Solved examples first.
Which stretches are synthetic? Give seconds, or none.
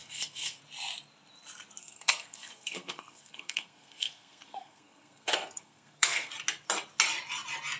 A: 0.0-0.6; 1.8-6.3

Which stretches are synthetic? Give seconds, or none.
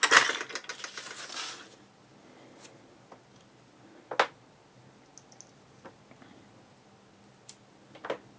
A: none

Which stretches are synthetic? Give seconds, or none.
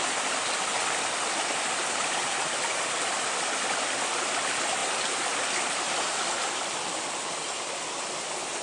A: none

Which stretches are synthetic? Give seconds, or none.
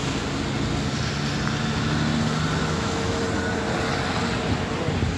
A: 2.6-3.2